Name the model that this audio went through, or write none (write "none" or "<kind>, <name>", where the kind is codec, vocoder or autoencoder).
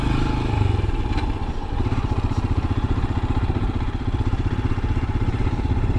vocoder, BigVGAN v2